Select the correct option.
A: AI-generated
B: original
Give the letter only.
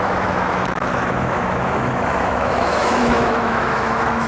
A